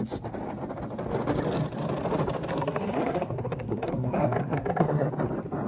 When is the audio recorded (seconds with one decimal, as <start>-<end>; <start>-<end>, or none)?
0.0-2.5; 5.1-5.7

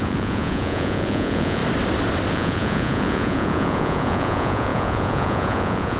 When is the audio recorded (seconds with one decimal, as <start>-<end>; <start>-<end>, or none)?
1.6-2.3

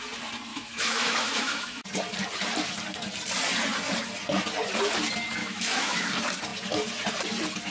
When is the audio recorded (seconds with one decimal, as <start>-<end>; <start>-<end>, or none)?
0.0-0.5; 1.8-5.4; 6.1-7.7

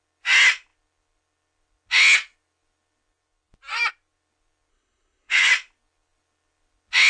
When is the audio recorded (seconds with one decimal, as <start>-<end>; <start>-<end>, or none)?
0.0-4.7; 5.5-7.1

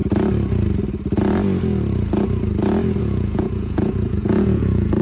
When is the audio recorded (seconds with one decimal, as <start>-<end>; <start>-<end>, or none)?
0.0-3.0